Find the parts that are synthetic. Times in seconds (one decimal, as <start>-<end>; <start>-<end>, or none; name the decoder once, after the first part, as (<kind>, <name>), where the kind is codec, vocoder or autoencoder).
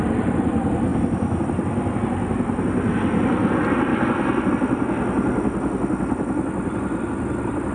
0.9-2.0 (vocoder, BigVGAN v2); 3.9-4.5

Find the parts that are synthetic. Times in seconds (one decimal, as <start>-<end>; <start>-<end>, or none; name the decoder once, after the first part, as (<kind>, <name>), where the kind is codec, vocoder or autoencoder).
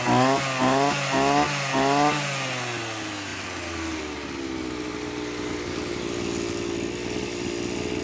none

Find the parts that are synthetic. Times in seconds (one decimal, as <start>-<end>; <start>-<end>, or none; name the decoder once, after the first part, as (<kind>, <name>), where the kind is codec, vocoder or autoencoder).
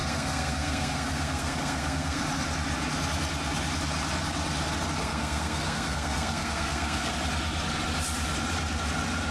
0.0-2.2 (codec, SNAC); 5.0-7.1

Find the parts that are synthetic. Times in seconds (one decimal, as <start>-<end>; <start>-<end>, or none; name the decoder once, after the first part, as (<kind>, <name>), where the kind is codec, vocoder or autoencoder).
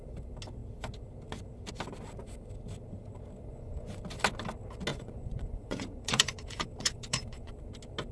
3.5-4.0 (vocoder, Vocos); 4.9-7.5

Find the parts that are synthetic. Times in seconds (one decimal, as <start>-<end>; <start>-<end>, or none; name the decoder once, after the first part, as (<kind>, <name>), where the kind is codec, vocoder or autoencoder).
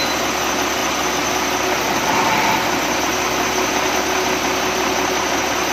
none